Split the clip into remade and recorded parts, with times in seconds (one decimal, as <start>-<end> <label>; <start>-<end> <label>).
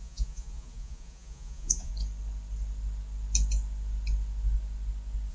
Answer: 0.0-1.9 remade; 1.9-5.3 recorded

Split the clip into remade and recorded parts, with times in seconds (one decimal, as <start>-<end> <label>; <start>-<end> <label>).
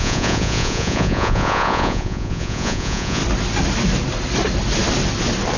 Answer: 0.0-3.2 remade; 3.2-5.6 recorded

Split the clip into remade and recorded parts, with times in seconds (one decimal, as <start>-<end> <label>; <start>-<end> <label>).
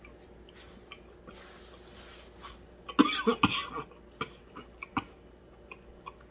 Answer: 0.0-6.3 recorded